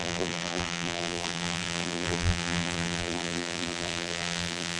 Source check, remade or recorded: remade